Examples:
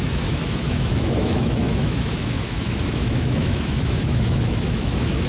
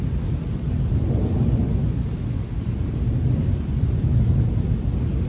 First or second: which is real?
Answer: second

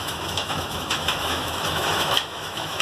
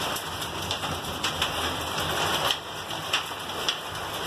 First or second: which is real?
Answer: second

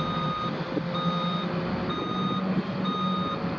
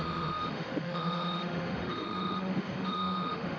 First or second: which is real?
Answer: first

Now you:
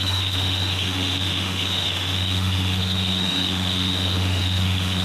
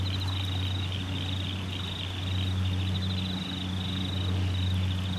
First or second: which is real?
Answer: second